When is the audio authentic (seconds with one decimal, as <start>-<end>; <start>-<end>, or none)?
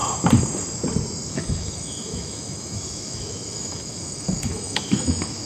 0.0-1.3